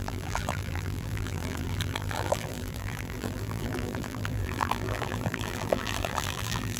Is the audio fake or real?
fake